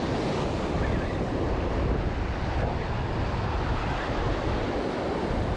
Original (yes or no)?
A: yes